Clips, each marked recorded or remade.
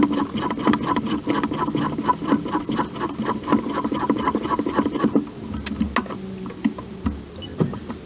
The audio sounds recorded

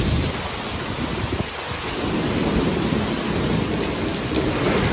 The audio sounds recorded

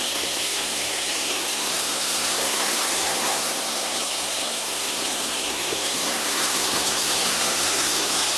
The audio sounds remade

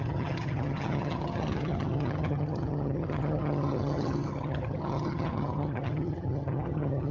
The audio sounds remade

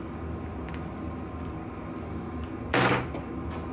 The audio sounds recorded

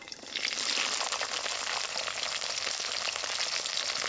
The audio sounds recorded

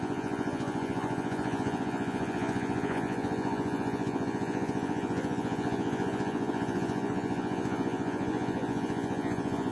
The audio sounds remade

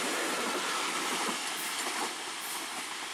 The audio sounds recorded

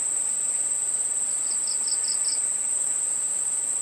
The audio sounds recorded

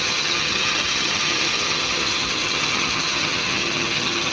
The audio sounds remade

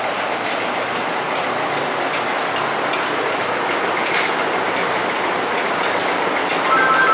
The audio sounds recorded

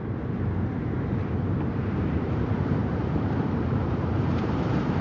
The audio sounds remade